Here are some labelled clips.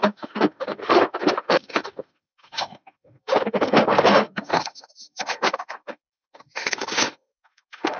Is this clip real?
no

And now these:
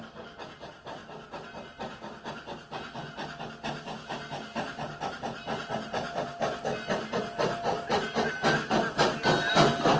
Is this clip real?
yes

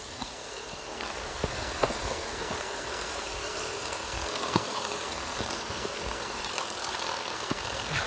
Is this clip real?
no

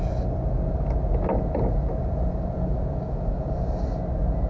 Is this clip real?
yes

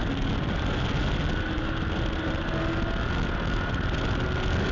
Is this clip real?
yes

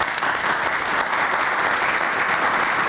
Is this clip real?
yes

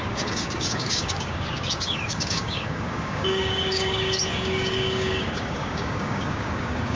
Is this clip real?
no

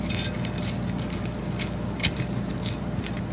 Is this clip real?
yes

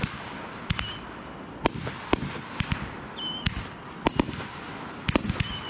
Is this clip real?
yes